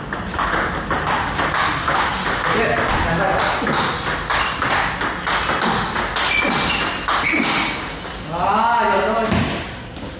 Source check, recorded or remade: recorded